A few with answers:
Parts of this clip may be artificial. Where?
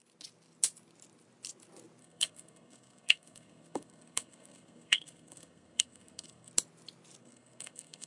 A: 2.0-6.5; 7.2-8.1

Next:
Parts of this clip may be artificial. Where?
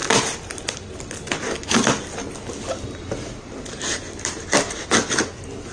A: none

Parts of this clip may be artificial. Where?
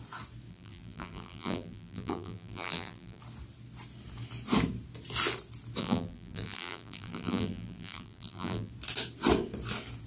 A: 0.5-3.2; 5.8-8.7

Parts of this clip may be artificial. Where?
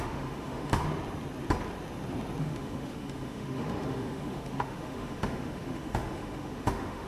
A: 0.0-0.8; 2.4-7.1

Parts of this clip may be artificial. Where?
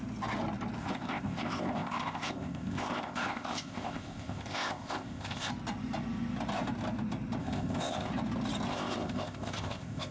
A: 0.8-5.5; 7.4-8.1; 8.7-10.1